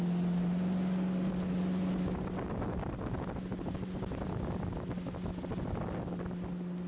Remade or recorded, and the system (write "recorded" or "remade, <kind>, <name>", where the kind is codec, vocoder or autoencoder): recorded